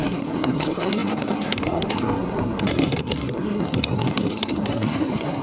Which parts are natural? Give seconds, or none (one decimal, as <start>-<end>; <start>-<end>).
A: none